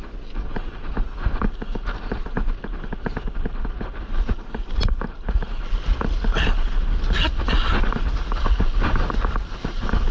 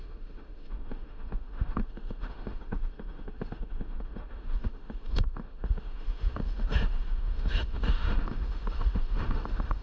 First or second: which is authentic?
first